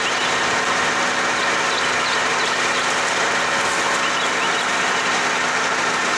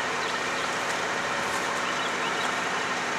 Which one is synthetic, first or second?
second